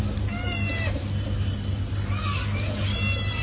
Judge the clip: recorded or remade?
recorded